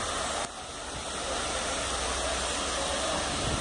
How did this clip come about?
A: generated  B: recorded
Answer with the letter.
B